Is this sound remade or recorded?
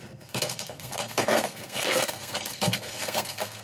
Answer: remade